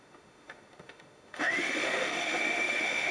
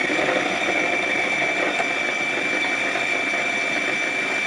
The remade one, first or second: first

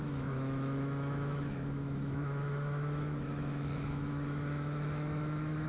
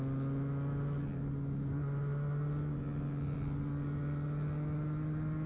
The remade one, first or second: first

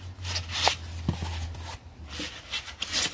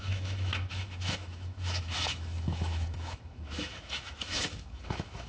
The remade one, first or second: second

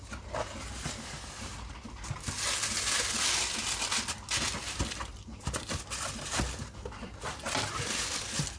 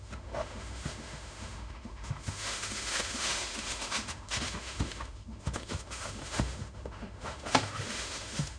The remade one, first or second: second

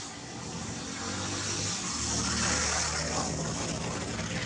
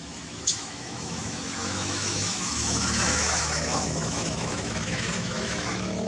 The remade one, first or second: second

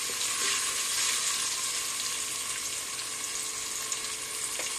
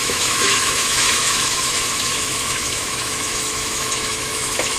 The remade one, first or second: second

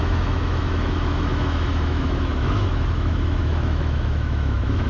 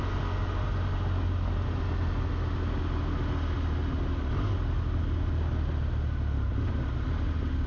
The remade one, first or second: first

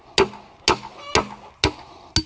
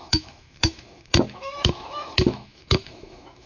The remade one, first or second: second